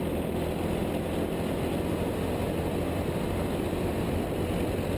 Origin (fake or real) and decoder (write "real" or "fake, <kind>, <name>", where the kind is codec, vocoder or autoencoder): real